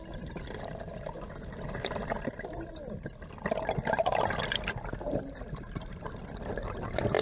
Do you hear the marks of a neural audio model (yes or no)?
no